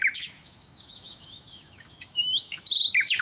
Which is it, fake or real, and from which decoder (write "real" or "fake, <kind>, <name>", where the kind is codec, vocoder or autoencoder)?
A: fake, autoencoder, DAC-VAE